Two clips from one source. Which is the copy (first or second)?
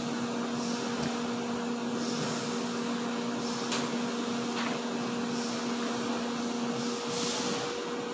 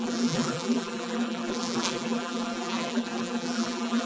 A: second